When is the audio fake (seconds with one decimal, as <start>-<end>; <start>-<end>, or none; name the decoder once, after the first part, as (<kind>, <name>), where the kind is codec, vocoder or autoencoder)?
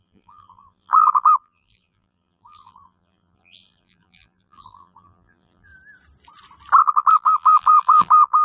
0.0-5.7 (vocoder, BigVGAN v2); 6.8-8.4